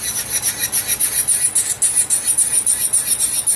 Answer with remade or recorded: recorded